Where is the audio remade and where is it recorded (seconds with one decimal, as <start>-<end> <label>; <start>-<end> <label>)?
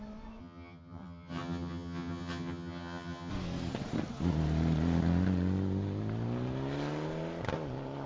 0.0-0.4 recorded; 0.4-3.3 remade; 3.3-8.1 recorded